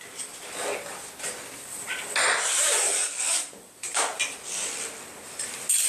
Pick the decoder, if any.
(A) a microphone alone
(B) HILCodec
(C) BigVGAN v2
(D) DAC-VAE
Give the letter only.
A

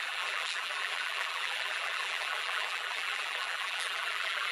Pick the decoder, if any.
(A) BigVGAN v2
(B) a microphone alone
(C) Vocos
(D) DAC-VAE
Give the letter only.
A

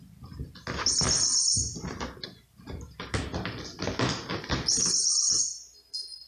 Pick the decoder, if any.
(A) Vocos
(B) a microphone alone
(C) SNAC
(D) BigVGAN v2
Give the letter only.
B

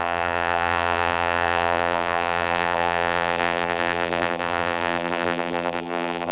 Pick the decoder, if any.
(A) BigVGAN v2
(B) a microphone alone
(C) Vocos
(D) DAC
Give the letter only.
A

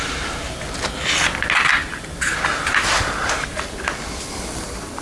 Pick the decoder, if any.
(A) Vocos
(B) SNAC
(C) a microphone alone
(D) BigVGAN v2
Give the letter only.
C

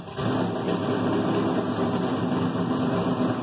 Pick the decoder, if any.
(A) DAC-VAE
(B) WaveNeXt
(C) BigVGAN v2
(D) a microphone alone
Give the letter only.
D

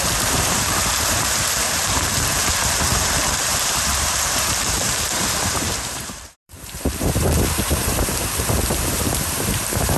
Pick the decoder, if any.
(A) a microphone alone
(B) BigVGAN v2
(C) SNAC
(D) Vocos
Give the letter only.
B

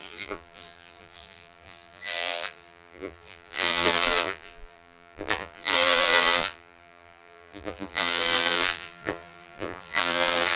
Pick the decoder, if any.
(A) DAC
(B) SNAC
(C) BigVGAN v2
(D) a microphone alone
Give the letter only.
C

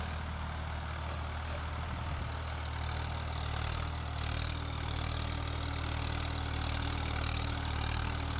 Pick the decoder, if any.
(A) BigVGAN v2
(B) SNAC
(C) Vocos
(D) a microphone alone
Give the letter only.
D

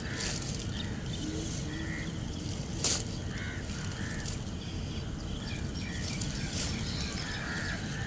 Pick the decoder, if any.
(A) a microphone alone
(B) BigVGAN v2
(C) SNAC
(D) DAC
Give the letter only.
A